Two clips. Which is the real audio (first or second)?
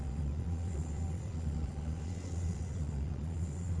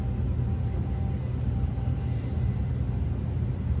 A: second